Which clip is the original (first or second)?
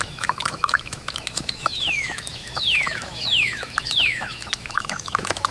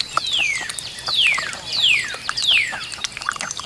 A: second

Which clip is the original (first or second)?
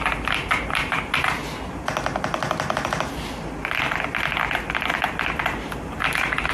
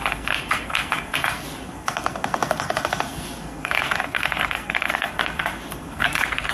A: first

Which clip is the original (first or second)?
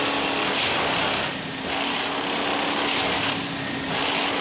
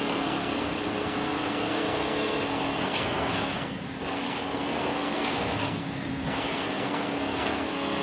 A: first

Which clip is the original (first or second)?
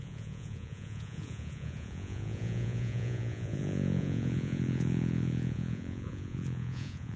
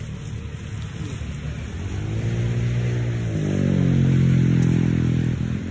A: second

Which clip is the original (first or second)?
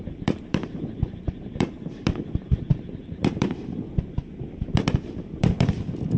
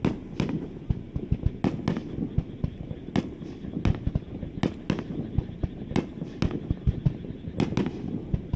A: second